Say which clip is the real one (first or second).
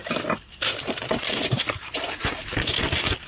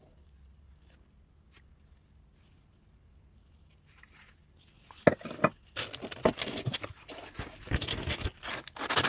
second